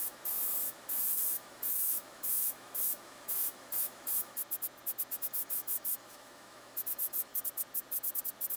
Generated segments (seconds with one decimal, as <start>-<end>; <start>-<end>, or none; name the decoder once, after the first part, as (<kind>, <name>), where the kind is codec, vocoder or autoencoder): 0.0-4.4 (autoencoder, DAC-VAE); 5.1-7.3

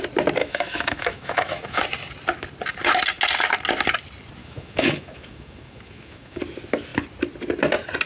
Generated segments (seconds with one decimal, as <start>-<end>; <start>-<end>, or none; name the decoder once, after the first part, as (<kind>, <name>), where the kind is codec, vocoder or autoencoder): 0.4-1.8 (autoencoder, DAC-VAE); 4.4-6.4

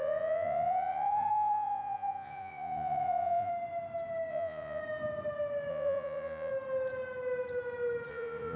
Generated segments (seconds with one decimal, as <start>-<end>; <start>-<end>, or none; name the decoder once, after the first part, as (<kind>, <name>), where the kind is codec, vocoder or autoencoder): 0.0-3.5 (vocoder, Vocos); 4.3-4.8; 5.7-6.5; 8.1-8.6

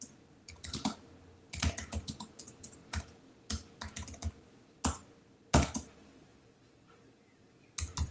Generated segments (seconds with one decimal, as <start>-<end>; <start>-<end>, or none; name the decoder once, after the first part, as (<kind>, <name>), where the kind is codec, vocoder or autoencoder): none

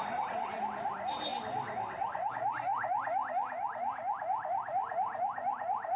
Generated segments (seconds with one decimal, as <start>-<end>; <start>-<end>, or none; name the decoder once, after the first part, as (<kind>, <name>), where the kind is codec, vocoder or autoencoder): 0.0-1.3 (vocoder, BigVGAN v2); 2.3-2.7; 3.3-6.0

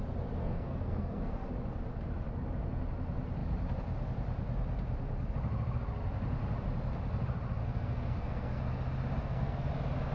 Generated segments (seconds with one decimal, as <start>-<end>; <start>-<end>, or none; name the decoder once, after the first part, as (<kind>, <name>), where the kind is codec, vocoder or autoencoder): 0.4-1.5 (codec, SNAC); 7.6-8.6; 9.2-9.7

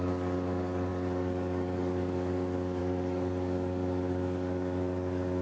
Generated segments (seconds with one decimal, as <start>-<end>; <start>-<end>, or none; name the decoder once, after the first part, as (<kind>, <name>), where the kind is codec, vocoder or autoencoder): 0.0-5.4 (codec, DAC)

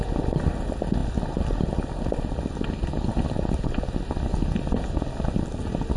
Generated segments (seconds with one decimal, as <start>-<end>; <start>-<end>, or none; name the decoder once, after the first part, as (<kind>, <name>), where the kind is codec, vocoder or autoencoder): none